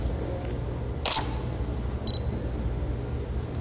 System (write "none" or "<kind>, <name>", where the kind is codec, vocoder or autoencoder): none